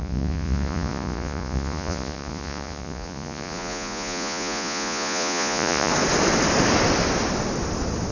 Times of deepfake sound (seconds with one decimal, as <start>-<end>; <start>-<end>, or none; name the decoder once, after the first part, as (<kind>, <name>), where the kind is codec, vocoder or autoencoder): 0.0-5.9 (vocoder, Vocos)